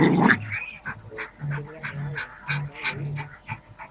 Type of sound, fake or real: real